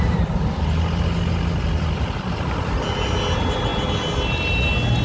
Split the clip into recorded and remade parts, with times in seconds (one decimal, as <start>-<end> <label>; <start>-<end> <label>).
0.0-5.0 recorded